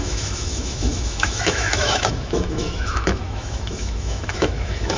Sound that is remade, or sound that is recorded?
remade